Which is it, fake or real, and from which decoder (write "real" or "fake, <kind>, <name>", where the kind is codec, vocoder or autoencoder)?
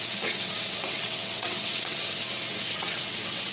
fake, vocoder, WaveNeXt